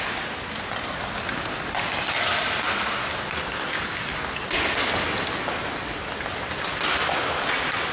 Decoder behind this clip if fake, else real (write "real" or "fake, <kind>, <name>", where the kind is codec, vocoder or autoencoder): real